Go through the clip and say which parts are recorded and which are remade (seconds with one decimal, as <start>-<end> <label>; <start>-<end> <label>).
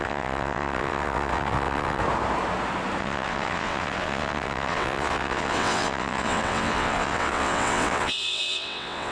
0.0-2.0 remade; 2.0-3.0 recorded; 3.0-9.1 remade